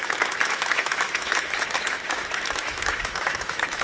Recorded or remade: remade